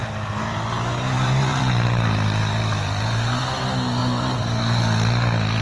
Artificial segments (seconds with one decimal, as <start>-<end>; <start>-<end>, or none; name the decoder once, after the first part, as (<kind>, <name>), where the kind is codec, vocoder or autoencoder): 0.0-3.4 (vocoder, BigVGAN v2); 4.0-4.6

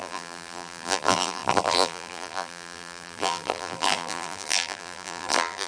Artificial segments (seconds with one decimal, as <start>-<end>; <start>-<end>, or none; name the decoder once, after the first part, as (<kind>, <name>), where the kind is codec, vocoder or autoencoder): 0.0-5.7 (vocoder, BigVGAN v2)